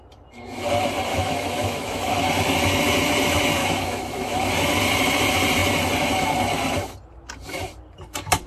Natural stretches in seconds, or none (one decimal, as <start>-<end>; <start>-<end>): 0.0-1.1; 2.1-3.6; 4.5-8.5